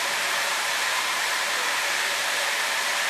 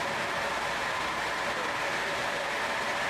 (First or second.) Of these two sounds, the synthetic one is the first